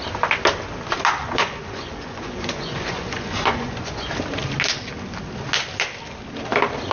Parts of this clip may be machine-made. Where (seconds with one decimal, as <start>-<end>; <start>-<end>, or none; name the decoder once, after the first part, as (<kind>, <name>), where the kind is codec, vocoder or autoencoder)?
1.2-4.1 (vocoder, Vocos)